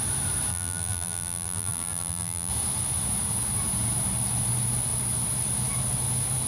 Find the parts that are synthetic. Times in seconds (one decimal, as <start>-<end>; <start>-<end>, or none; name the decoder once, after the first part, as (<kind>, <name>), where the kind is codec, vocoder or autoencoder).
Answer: 0.5-2.5 (vocoder, BigVGAN v2)